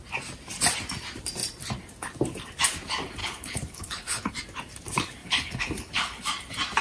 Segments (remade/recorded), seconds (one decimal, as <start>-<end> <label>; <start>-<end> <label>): 0.0-3.2 recorded; 3.2-4.3 remade; 4.3-5.2 recorded; 5.2-6.2 remade; 6.2-6.8 recorded